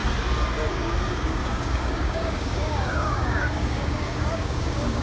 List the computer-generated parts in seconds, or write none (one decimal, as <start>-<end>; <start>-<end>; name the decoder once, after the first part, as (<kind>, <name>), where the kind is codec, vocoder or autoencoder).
0.7-5.0 (codec, DAC)